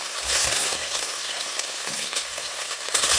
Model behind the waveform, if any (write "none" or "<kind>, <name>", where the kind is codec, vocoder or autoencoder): codec, SNAC